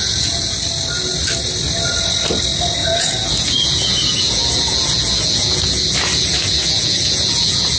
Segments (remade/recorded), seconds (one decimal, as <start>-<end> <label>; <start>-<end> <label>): 0.0-0.6 remade; 0.6-2.8 recorded; 2.8-7.8 remade